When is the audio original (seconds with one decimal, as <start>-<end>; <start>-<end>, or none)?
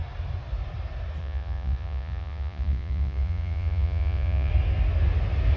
0.0-1.2; 4.5-5.6